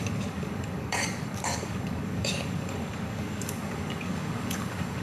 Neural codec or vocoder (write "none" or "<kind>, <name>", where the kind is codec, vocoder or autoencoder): codec, DAC